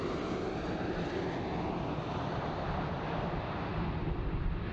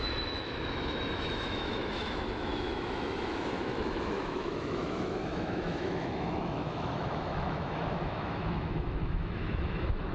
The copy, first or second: second